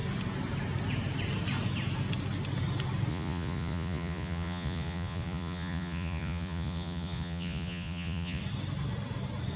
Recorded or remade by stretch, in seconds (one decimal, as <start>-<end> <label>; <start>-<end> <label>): 0.0-3.1 recorded; 3.1-8.4 remade; 8.4-9.6 recorded